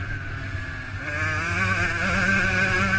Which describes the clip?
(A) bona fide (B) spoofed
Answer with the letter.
A